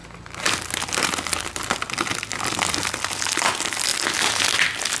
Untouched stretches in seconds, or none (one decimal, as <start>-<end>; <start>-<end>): 0.0-5.0